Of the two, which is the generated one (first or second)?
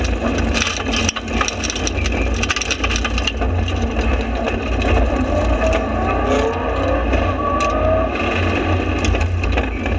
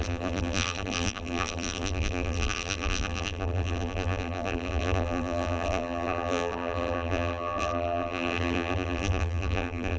second